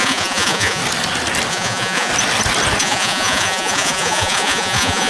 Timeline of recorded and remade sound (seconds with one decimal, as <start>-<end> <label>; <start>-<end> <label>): 0.0-0.8 remade; 0.8-1.5 recorded; 1.5-2.1 remade; 2.1-2.8 recorded; 2.8-5.1 remade